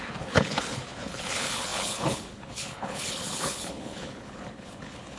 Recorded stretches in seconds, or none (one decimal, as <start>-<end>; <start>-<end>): none